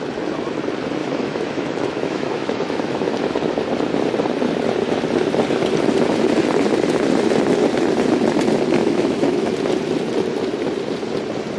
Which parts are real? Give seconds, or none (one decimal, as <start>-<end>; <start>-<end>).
0.0-1.0; 3.1-8.8; 9.5-11.6